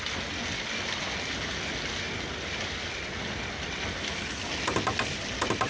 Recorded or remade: recorded